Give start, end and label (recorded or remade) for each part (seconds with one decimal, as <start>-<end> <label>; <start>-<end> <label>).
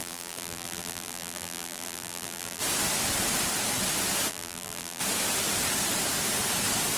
0.0-2.6 remade; 2.6-4.3 recorded; 4.3-5.0 remade; 5.0-7.0 recorded